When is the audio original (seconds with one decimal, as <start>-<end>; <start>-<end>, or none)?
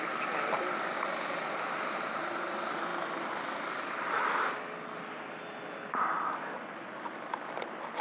0.0-8.0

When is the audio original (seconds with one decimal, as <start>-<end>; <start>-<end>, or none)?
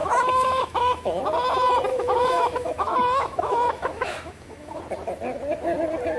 1.2-1.9; 4.8-6.2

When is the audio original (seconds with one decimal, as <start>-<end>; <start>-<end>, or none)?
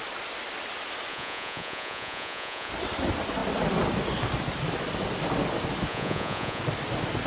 0.0-1.1; 2.7-5.9; 6.6-7.3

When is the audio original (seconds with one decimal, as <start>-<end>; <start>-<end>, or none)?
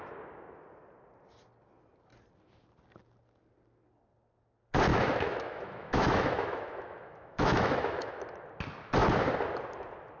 0.0-4.9; 8.2-10.2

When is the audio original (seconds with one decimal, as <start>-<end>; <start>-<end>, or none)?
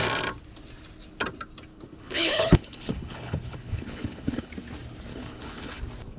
0.0-1.7; 4.5-5.1; 5.8-6.2